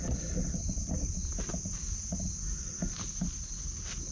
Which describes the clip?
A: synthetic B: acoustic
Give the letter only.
B